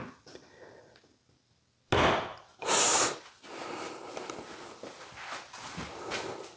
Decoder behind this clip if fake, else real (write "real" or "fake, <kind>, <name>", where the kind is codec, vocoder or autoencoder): real